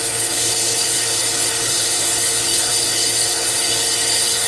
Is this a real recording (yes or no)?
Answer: no